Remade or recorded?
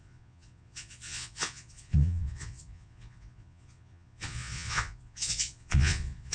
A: remade